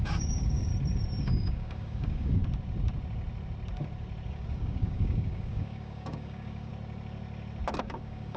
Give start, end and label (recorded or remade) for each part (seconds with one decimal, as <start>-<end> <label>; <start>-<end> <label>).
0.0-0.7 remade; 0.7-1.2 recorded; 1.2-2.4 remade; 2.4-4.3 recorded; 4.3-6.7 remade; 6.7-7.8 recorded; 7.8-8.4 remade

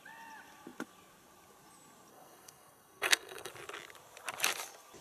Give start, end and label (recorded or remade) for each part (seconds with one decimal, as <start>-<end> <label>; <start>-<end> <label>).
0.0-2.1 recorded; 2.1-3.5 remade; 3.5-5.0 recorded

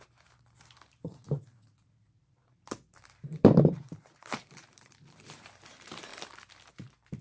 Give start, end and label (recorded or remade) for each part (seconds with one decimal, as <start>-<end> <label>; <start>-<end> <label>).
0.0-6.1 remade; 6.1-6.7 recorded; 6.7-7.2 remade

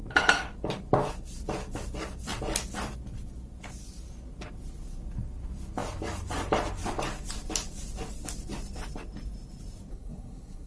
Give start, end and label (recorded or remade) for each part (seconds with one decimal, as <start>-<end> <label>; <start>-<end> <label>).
0.0-9.9 recorded; 9.9-10.7 remade